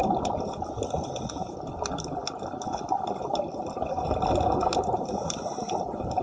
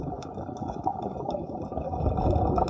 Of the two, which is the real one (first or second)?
first